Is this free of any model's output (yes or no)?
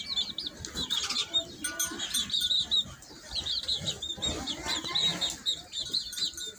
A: yes